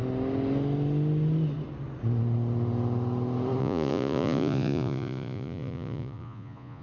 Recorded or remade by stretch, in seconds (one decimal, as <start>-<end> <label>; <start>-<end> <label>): 0.0-3.6 recorded; 3.6-6.8 remade